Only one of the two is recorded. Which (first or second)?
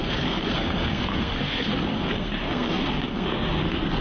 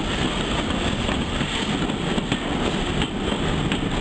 second